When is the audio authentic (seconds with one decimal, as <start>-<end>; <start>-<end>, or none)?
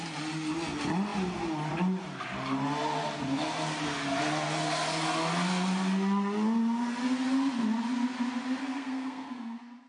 0.0-8.6